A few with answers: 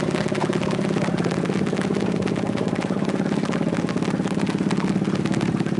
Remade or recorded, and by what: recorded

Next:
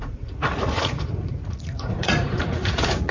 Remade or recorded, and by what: remade, vocoder, Vocos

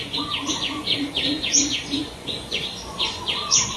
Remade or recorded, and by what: remade, vocoder, Vocos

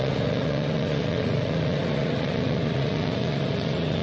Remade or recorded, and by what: remade, vocoder, Vocos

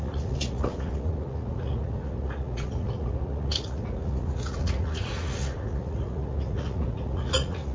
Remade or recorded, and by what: remade, vocoder, Vocos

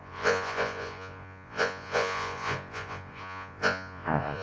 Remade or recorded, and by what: remade, vocoder, Vocos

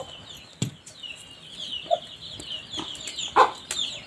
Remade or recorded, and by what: recorded